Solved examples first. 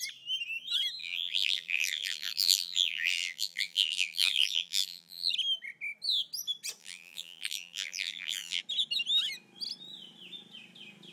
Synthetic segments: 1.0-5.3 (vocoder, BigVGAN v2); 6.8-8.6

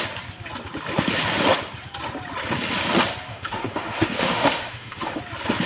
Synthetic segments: 3.3-5.2 (autoencoder, DAC-VAE)

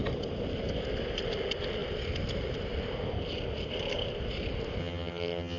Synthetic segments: 4.8-5.6 (vocoder, HiFi-GAN)